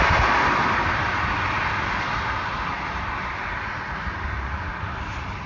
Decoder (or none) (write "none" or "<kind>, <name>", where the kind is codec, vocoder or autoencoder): none